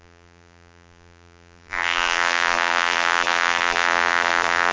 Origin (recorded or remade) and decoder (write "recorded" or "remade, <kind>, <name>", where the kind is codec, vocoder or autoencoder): remade, vocoder, BigVGAN v2